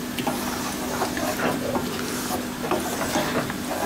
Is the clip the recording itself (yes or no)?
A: yes